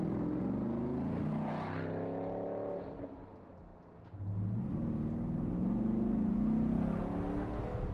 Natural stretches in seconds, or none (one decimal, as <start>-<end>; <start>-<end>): 0.0-7.9